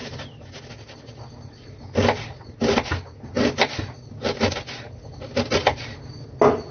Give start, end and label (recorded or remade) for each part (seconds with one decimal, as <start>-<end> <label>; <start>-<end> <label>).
0.0-6.7 recorded